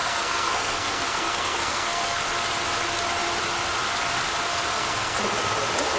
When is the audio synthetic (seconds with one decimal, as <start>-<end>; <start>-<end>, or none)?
0.0-2.2; 4.5-5.2